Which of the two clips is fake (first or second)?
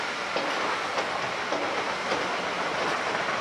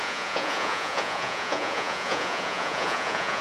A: second